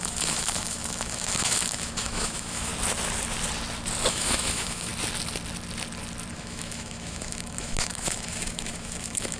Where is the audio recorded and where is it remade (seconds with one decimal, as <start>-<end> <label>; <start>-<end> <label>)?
0.0-2.7 remade; 2.7-4.1 recorded; 4.1-4.9 remade; 4.9-6.3 recorded; 6.3-9.4 remade